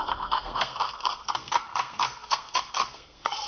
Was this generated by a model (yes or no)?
yes